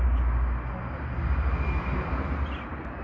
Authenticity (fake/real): real